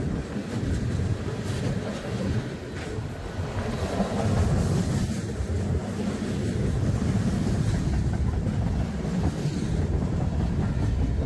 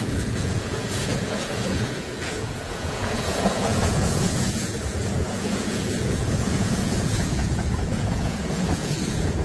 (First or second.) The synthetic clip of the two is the second